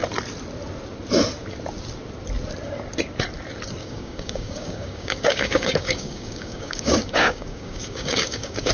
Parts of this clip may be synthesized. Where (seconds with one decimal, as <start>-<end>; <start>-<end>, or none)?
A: 3.8-8.7